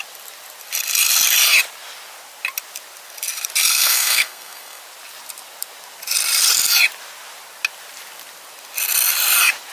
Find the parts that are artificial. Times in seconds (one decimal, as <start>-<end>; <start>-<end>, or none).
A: 3.7-4.8

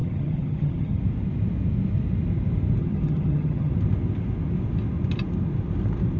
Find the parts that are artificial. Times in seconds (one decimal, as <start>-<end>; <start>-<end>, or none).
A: 0.0-1.0; 2.8-3.7

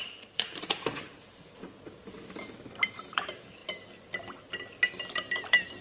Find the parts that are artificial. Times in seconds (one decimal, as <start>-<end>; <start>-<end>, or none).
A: 0.0-3.6; 5.1-5.8

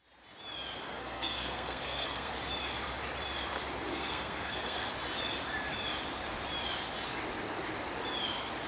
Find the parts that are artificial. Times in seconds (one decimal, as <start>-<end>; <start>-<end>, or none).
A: 0.9-2.3; 3.9-4.9

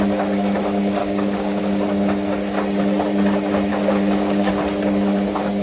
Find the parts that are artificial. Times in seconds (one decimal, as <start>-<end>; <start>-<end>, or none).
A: 1.0-1.6; 3.7-4.5

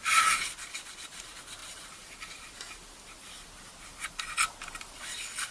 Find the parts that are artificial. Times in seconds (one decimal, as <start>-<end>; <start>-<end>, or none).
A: none